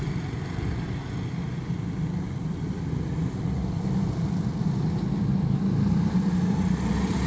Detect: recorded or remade recorded